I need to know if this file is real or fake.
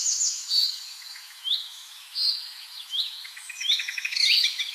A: fake